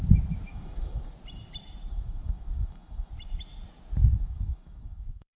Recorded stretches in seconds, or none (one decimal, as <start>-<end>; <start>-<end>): 0.0-0.5; 1.1-1.9; 3.1-4.1